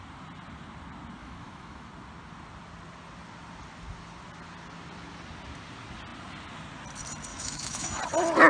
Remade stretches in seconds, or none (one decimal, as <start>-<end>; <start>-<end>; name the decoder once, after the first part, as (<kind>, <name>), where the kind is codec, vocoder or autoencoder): 1.2-1.9 (autoencoder, DAC-VAE); 7.3-8.0